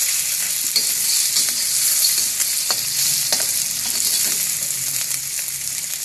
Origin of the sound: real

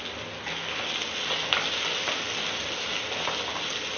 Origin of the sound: real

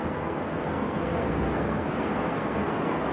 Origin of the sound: fake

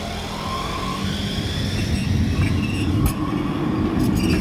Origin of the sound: real